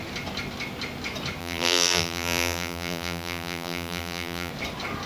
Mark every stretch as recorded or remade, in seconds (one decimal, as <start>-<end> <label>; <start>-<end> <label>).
0.0-1.4 recorded; 1.4-4.5 remade; 4.5-5.1 recorded